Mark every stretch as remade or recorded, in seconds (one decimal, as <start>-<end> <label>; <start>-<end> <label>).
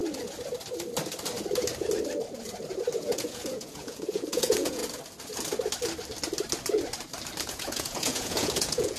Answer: 0.0-3.0 recorded; 3.0-4.8 remade; 4.8-7.4 recorded; 7.4-9.0 remade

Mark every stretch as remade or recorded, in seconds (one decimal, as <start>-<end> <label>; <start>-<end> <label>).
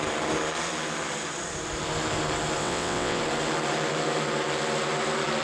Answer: 0.0-2.6 recorded; 2.6-3.2 remade; 3.2-5.4 recorded